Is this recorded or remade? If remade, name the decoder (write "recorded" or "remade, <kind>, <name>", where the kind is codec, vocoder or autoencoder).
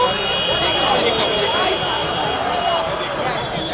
recorded